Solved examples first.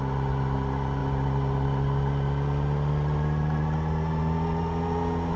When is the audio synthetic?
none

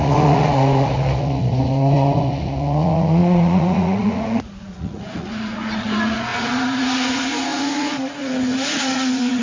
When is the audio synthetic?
0.0-9.4 (vocoder, Vocos)

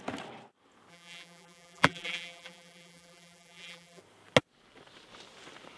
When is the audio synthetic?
0.9-4.0 (vocoder, BigVGAN v2)